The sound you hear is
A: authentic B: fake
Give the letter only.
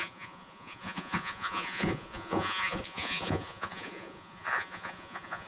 B